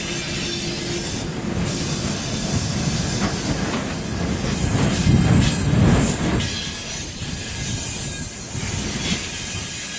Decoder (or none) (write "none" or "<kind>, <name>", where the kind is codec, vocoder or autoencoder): none